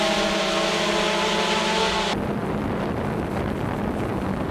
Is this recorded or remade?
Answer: recorded